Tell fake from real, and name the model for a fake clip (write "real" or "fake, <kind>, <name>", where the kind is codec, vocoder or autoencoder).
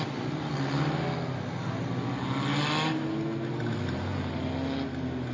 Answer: real